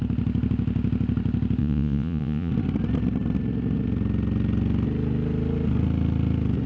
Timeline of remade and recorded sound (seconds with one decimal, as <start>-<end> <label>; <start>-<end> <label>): 0.0-1.6 recorded; 1.6-2.5 remade; 2.5-6.7 recorded